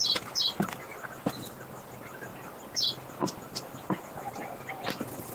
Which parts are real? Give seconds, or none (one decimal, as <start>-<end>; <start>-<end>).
0.0-5.3